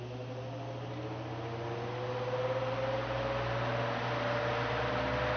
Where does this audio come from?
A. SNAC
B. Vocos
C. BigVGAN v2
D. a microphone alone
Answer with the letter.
D